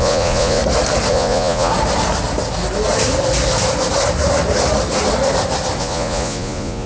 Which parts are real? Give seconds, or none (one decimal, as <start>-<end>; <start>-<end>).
0.6-1.1; 1.7-5.8